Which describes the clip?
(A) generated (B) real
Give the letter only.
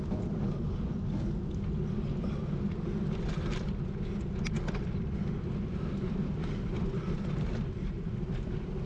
B